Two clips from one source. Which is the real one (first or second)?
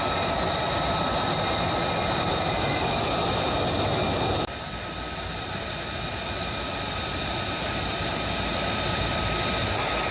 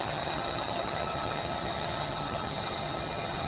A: first